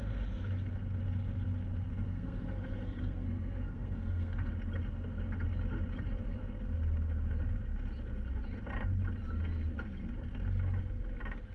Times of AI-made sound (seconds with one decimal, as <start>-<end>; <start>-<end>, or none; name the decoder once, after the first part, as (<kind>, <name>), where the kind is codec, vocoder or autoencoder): 1.9-4.5 (codec, SNAC)

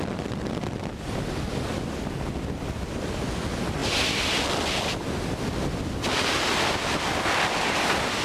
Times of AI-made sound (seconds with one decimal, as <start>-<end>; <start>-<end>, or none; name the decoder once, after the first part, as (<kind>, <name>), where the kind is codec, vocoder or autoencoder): none

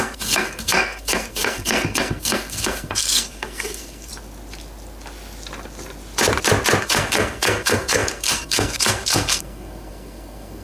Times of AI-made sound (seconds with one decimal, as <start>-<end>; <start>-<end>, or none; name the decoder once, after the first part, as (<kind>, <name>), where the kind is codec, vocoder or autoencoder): 0.0-4.1 (codec, SNAC); 6.8-10.6

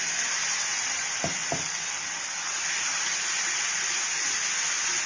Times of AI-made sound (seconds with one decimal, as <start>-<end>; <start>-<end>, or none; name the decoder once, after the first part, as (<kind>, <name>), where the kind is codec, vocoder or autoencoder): none

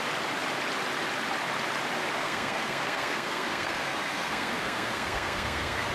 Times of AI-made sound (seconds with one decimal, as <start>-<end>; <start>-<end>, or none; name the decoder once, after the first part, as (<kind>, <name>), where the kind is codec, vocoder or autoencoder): 2.2-5.9 (codec, SNAC)